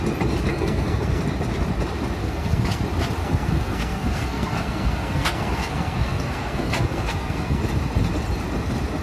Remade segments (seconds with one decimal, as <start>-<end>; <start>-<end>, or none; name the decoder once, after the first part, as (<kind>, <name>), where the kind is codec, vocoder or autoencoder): 0.5-1.2 (codec, SNAC); 2.2-2.8; 3.2-7.6